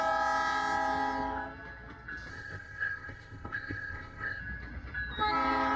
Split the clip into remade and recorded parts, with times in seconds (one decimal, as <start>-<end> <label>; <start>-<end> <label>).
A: 0.0-2.3 recorded; 2.3-4.4 remade; 4.4-5.8 recorded